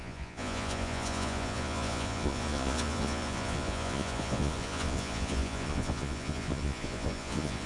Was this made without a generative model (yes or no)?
no